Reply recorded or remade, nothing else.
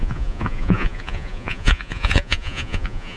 remade